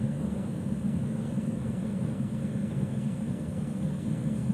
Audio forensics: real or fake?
fake